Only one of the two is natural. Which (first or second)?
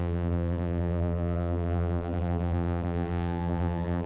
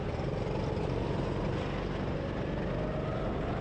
second